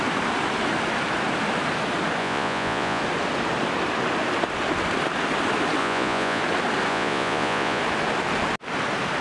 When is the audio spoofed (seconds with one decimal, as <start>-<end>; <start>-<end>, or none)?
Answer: 2.2-3.0; 5.8-6.4; 6.9-7.8